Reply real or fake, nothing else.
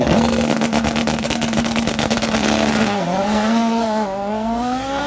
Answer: fake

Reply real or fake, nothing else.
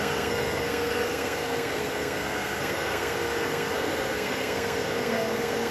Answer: fake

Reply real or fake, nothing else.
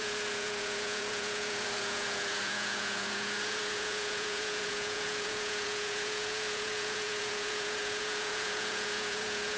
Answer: fake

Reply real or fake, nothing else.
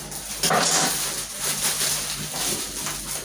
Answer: real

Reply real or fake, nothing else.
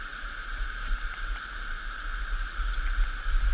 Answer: real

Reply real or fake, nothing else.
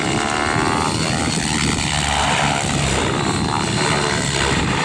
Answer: fake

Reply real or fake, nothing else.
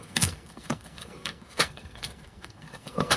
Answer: fake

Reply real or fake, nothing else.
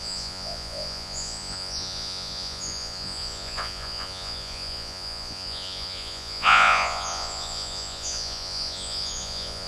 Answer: fake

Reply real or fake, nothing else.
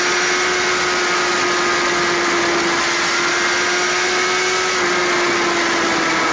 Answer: real